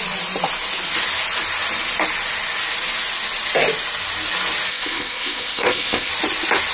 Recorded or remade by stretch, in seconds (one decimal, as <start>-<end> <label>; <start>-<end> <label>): 0.0-4.7 recorded; 4.7-6.1 remade; 6.1-6.7 recorded